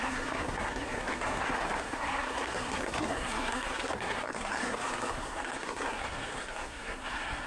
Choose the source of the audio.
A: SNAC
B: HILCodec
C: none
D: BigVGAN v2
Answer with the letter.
A